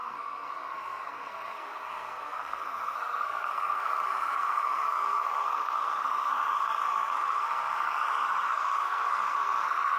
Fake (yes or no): yes